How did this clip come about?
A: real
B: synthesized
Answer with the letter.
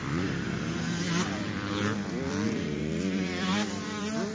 B